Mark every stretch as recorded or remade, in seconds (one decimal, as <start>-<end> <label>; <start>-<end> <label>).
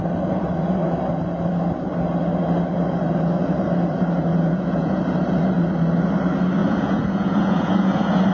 0.0-4.3 recorded; 4.3-5.0 remade; 5.0-6.6 recorded; 6.6-8.3 remade